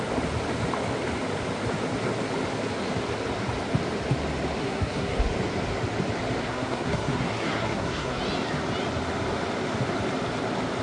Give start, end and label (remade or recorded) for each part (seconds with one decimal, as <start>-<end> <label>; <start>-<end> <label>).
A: 0.0-4.6 recorded; 4.6-5.2 remade; 5.2-6.4 recorded; 6.4-8.2 remade; 8.2-10.8 recorded